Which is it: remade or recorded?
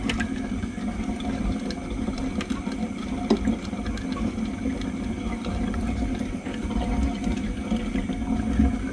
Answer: recorded